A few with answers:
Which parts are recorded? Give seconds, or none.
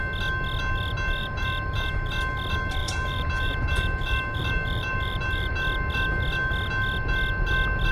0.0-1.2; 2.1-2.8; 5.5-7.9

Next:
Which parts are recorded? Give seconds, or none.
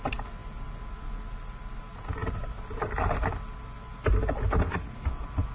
0.0-5.5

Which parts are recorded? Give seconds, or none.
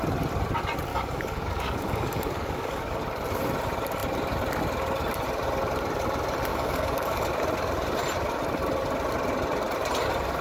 0.0-0.9; 3.0-6.5; 7.3-10.4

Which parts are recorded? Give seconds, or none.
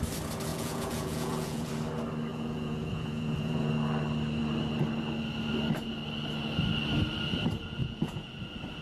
0.0-0.5; 1.7-2.3; 3.7-7.8; 8.3-8.8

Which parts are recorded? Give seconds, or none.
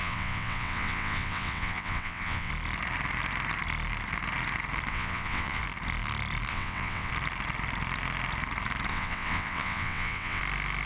2.5-4.9; 5.6-6.5; 7.1-8.9; 10.4-10.9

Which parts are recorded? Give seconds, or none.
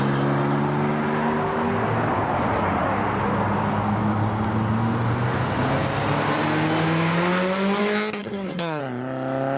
0.0-8.2; 8.8-9.6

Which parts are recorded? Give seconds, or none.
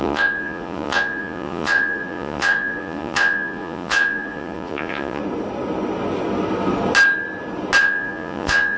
5.2-7.8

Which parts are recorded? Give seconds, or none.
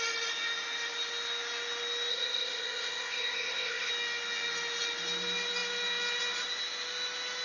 0.0-2.1; 3.9-7.4